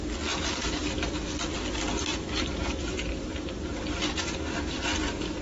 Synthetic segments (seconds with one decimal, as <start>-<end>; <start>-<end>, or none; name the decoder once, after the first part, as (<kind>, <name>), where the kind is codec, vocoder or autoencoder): 2.1-5.4 (vocoder, BigVGAN v2)